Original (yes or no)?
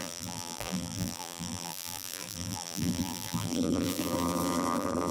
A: no